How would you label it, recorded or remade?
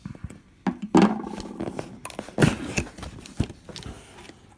recorded